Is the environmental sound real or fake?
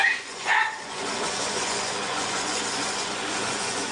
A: fake